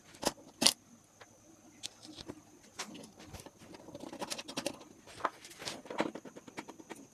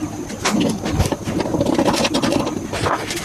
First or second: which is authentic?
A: second